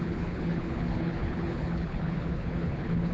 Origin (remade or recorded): remade